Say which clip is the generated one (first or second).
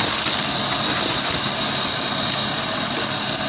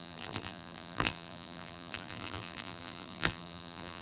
second